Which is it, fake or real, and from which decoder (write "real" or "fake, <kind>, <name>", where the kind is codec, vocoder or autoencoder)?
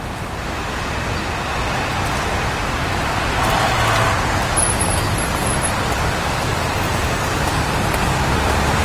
real